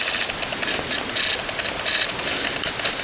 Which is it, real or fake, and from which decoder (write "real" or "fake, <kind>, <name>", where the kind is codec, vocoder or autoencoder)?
real